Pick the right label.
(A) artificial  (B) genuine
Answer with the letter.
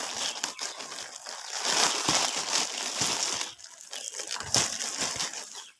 B